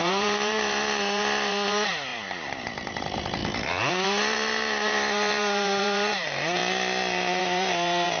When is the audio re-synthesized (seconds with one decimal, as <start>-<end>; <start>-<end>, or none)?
0.0-3.4; 3.9-6.6; 7.4-8.2